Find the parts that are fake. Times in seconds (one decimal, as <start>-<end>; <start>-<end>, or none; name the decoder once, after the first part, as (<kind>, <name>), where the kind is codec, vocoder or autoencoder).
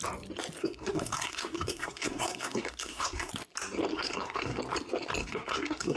0.6-3.3 (codec, SNAC); 3.9-4.6; 5.2-6.0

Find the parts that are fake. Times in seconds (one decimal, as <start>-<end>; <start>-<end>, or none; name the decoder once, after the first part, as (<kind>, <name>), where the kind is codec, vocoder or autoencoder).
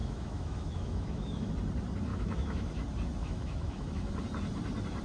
0.0-1.5 (autoencoder, DAC-VAE); 2.1-2.7; 3.2-4.1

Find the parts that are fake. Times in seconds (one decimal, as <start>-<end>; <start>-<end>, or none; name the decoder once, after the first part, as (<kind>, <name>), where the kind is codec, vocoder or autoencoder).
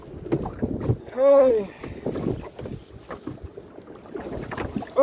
1.0-1.5 (codec, SNAC)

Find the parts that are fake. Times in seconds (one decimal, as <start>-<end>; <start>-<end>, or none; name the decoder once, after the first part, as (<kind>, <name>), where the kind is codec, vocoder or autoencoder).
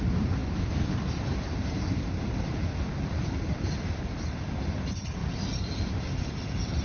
0.0-0.4 (vocoder, BigVGAN v2); 1.0-2.7; 4.5-5.2; 5.8-6.8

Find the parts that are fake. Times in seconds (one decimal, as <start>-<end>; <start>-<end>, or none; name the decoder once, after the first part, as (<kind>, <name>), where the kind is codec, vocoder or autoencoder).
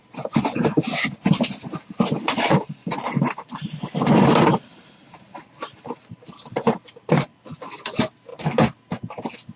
2.8-7.3 (vocoder, BigVGAN v2); 8.3-9.0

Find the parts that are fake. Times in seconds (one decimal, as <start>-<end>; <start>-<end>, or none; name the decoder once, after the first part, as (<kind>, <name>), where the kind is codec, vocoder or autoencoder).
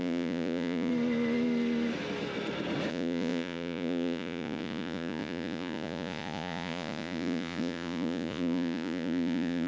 0.0-0.9 (vocoder, Vocos); 2.9-9.7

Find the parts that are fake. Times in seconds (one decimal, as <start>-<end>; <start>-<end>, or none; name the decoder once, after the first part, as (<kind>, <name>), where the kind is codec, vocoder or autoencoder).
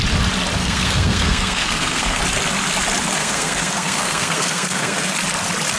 0.6-2.2 (codec, SNAC); 3.2-5.1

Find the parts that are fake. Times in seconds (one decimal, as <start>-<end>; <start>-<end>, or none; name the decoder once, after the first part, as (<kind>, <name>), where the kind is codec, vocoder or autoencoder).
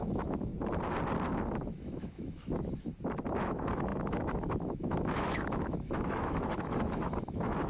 0.0-0.5 (autoencoder, DAC-VAE); 1.5-2.9; 3.4-7.7